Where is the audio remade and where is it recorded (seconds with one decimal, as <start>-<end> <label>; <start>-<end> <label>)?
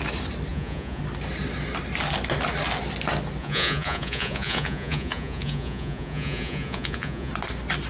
0.0-0.5 recorded; 0.5-1.0 remade; 1.0-3.4 recorded; 3.4-7.3 remade; 7.3-7.9 recorded